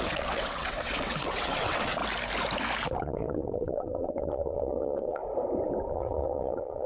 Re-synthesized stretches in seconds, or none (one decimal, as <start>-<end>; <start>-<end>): 0.0-2.0; 3.0-5.2; 5.9-6.9